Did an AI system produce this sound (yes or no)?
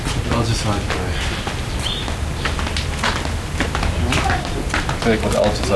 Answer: no